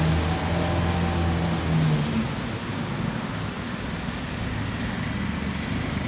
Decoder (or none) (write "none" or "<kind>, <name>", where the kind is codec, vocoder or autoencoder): none